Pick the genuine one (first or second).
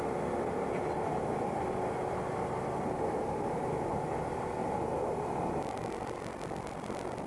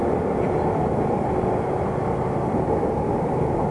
first